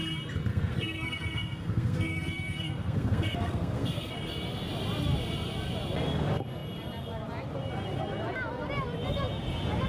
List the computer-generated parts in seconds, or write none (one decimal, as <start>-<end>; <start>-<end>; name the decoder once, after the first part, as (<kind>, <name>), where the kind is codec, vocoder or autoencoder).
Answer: 0.5-4.1 (codec, SNAC)